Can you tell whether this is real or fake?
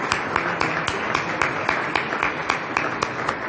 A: real